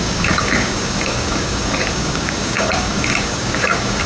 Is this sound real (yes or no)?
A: no